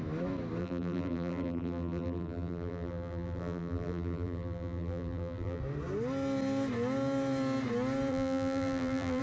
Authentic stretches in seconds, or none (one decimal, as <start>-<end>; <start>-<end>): 0.0-0.6; 5.6-8.1